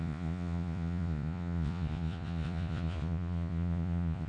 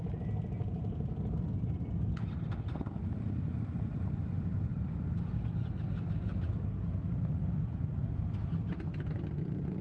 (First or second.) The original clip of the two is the second